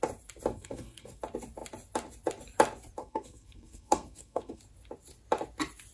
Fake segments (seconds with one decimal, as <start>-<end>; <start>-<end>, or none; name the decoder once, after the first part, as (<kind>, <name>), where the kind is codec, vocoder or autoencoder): 0.5-1.2 (codec, SNAC); 3.0-4.6